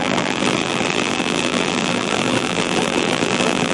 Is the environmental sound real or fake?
fake